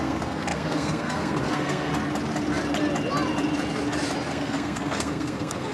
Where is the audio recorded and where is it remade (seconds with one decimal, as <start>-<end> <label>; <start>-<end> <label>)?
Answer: 0.0-1.9 remade; 1.9-4.3 recorded; 4.3-5.7 remade